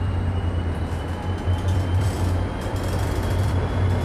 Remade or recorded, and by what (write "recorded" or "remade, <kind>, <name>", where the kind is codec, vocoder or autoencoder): remade, vocoder, BigVGAN v2